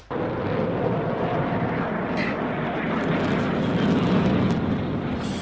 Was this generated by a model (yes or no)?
no